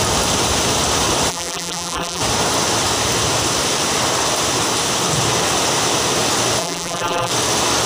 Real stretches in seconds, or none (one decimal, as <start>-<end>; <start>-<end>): 0.0-1.3; 2.2-6.6; 7.3-7.9